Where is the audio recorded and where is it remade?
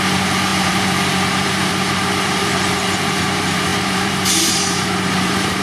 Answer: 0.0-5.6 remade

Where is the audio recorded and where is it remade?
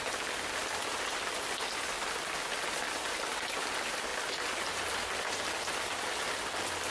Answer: 0.0-6.9 recorded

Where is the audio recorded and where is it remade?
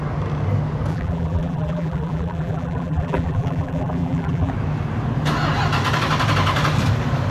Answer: 0.0-0.9 recorded; 0.9-4.5 remade; 4.5-7.3 recorded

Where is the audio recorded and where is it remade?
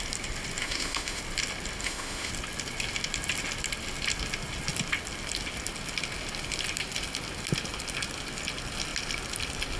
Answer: 0.0-0.6 recorded; 0.6-1.2 remade; 1.2-1.8 recorded; 1.8-2.3 remade; 2.3-9.8 recorded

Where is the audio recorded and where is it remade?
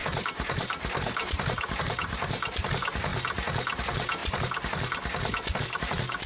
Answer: 0.0-3.1 remade; 3.1-3.8 recorded; 3.8-4.2 remade; 4.2-5.6 recorded; 5.6-6.3 remade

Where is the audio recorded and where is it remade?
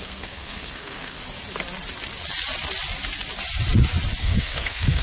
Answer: 0.0-1.2 remade; 1.2-4.2 recorded; 4.2-5.0 remade